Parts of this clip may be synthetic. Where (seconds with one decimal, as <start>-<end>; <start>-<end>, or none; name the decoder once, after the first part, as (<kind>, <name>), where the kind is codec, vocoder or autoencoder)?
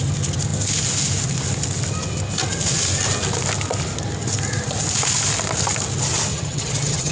6.3-7.1 (vocoder, HiFi-GAN)